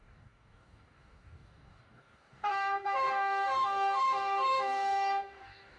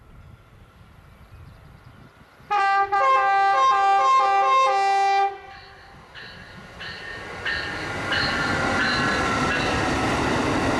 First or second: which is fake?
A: first